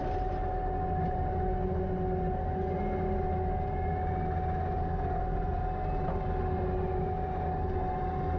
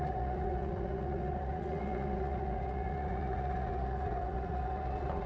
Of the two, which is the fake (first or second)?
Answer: second